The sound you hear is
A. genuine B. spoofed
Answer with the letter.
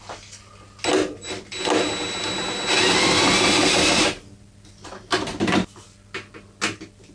A